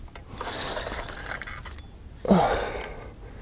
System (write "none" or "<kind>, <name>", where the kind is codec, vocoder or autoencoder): none